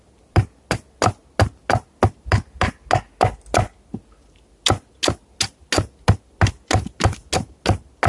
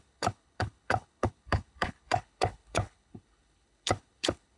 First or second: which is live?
first